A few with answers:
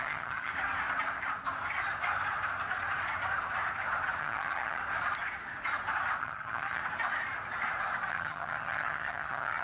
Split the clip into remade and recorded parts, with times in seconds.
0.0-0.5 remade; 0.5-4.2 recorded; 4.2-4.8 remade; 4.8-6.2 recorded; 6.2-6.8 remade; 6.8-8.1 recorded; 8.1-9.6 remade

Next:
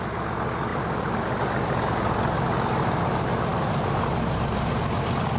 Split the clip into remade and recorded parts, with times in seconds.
0.0-5.4 recorded